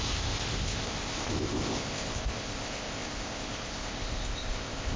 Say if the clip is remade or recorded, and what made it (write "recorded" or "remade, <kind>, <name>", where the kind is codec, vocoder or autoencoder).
remade, codec, ZipCodec